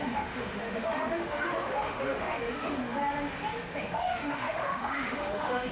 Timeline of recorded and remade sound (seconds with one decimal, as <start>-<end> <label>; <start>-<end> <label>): 0.0-3.0 remade; 3.0-3.8 recorded; 3.8-5.7 remade